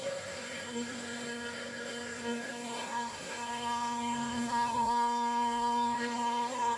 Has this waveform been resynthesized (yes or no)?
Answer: yes